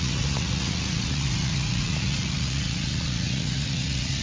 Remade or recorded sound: remade